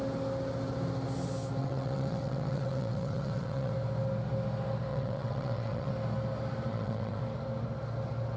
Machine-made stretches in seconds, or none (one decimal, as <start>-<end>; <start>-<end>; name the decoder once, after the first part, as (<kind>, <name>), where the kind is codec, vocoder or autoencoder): 1.6-3.7 (vocoder, WaveNeXt); 4.9-5.9; 6.7-7.2